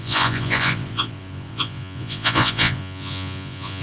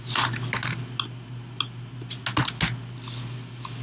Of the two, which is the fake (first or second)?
first